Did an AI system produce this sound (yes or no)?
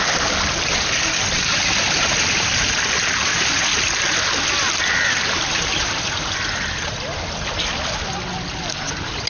no